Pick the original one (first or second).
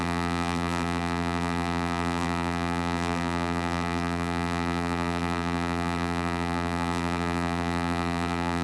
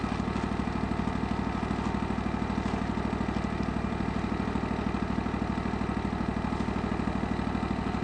second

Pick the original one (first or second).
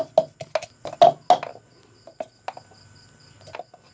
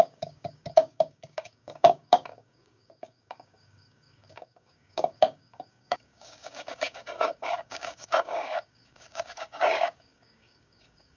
first